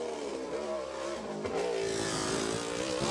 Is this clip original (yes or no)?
yes